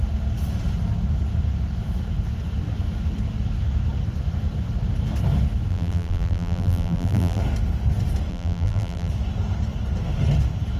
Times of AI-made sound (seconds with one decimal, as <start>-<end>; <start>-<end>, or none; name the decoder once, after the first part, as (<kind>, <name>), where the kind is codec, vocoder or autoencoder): 5.7-7.4 (vocoder, BigVGAN v2); 8.3-9.1